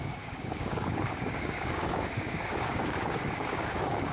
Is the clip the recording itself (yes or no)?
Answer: no